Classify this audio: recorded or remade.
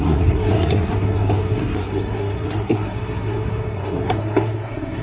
remade